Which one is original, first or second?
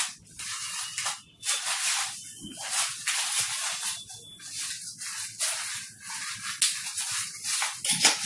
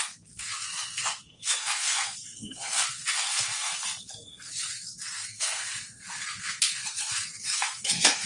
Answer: first